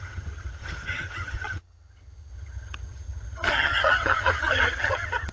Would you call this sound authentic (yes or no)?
no